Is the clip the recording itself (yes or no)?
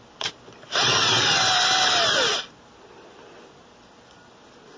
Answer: yes